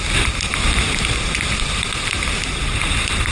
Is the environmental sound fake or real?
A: real